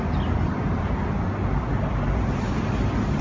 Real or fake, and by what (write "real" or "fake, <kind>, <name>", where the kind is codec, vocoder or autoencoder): real